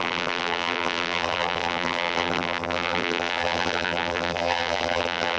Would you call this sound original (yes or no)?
no